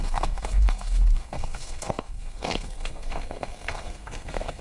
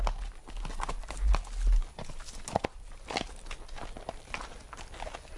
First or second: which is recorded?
second